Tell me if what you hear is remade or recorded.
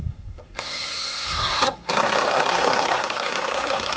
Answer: remade